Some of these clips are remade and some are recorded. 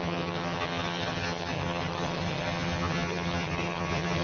remade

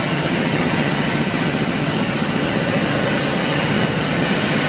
remade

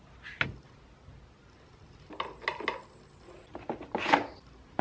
recorded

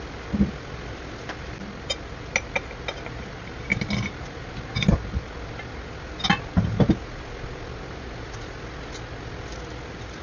recorded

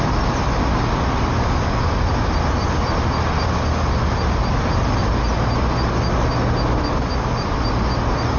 recorded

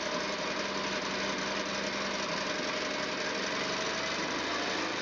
recorded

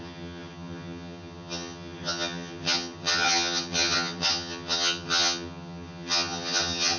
remade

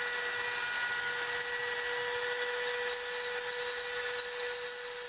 recorded